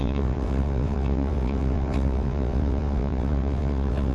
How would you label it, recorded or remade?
remade